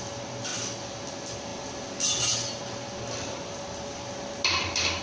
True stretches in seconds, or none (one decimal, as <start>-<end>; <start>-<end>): 0.0-5.0